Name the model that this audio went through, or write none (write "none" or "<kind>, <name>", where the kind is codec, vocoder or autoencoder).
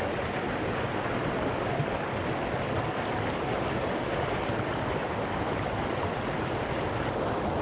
none